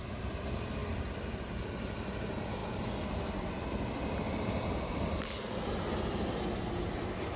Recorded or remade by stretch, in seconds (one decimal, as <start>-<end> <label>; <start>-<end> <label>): 0.0-7.4 recorded